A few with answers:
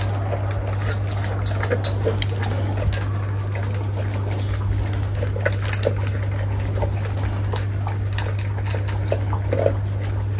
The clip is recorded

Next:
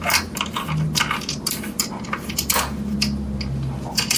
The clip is recorded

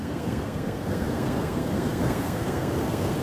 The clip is remade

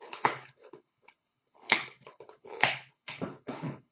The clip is remade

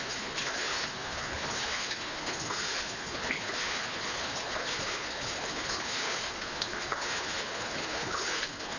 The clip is remade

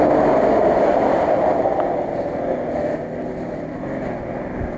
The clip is recorded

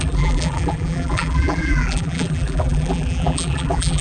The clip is remade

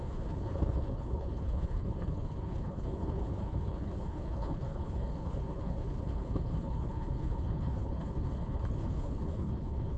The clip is remade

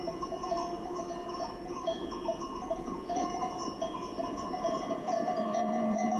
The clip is remade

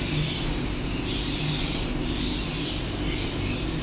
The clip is recorded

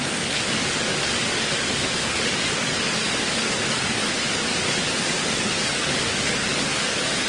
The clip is remade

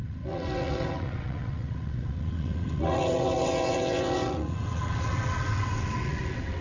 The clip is remade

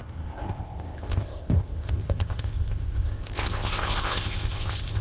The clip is remade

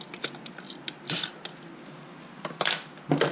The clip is recorded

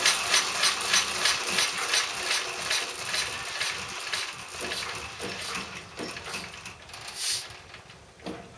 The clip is recorded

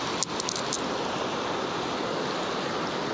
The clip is recorded